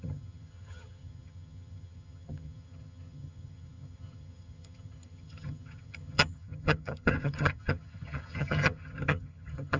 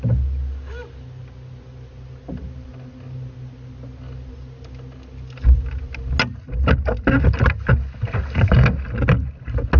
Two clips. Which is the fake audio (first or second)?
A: first